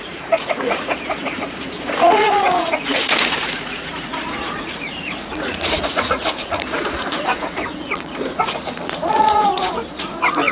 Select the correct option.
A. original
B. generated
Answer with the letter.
B